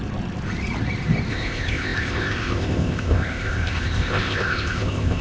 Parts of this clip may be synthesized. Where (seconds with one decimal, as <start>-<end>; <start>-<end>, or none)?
1.3-5.2